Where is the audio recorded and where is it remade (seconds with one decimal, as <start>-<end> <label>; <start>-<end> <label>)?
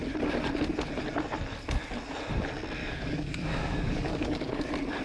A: 0.0-2.8 recorded; 2.8-4.5 remade; 4.5-5.0 recorded